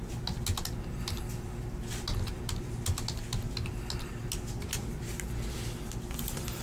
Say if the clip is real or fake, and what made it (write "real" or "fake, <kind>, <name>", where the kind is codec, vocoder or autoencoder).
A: real